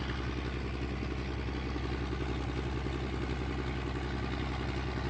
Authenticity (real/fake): real